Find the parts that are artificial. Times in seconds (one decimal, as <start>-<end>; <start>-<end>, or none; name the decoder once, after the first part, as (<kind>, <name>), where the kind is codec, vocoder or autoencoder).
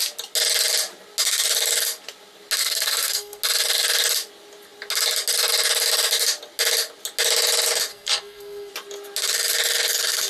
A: 2.6-3.4 (codec, SNAC); 7.9-8.7